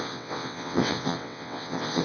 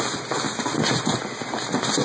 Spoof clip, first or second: first